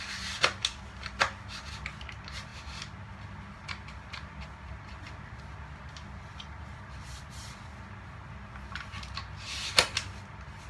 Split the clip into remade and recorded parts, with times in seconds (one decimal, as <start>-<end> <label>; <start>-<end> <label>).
0.0-10.7 recorded